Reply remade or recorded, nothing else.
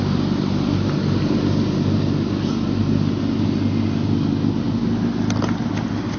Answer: recorded